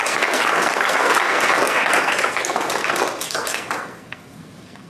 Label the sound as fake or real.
fake